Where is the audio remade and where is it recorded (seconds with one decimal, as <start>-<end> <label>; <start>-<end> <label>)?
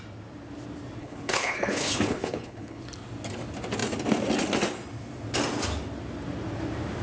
0.0-1.0 recorded; 1.0-2.8 remade; 2.8-7.0 recorded